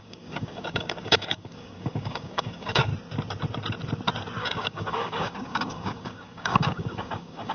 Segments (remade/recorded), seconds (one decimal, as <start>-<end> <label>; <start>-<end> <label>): 0.0-2.9 remade; 2.9-4.4 recorded; 4.4-7.5 remade

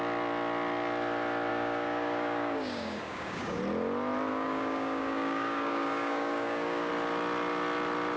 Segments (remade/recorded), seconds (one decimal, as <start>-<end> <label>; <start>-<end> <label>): 0.0-1.5 recorded; 1.5-3.6 remade; 3.6-4.3 recorded; 4.3-6.9 remade; 6.9-8.2 recorded

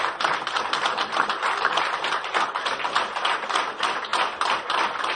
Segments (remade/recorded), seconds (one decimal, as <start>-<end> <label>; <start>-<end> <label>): 0.0-5.2 recorded

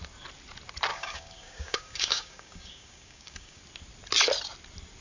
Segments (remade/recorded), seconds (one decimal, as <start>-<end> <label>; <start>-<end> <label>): 0.0-0.9 recorded; 0.9-3.6 remade; 3.6-5.0 recorded

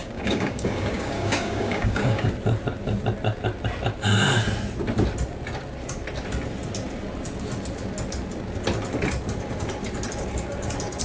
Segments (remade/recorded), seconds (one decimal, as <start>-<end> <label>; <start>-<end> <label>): 0.0-2.3 remade; 2.3-11.0 recorded